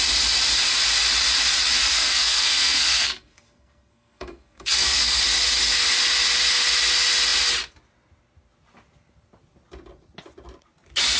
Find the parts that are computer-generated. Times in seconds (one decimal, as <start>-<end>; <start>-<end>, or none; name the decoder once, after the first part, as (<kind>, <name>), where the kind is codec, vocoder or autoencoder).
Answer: 1.8-5.2 (codec, SNAC)